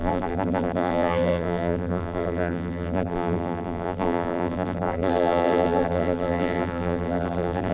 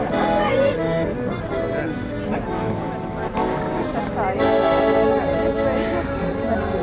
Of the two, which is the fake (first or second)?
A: first